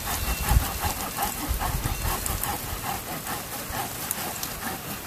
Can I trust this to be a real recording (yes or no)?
yes